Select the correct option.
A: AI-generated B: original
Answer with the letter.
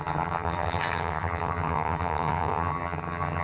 A